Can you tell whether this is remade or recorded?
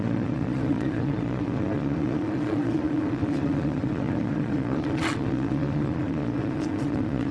remade